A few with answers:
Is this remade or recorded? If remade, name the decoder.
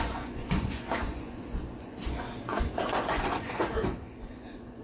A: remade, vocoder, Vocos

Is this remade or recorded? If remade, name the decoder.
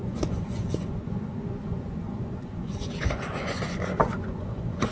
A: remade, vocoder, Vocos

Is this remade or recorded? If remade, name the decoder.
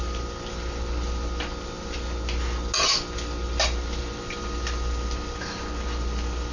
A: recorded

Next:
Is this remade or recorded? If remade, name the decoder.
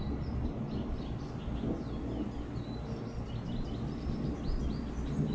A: recorded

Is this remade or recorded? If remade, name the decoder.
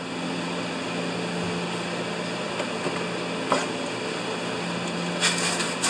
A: recorded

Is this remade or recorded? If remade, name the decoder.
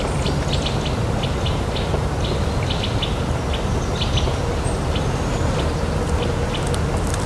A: recorded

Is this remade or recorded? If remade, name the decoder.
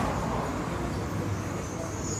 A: recorded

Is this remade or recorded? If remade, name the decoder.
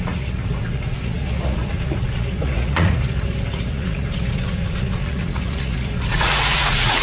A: remade, vocoder, Vocos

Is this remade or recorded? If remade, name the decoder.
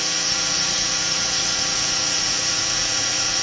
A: remade, vocoder, Vocos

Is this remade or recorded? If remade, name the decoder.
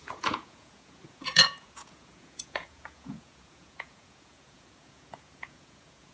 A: remade, vocoder, Vocos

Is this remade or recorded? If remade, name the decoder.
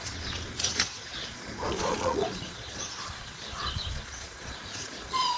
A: remade, vocoder, Vocos